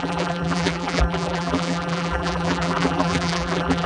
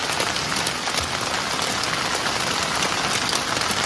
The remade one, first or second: first